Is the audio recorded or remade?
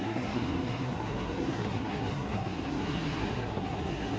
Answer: remade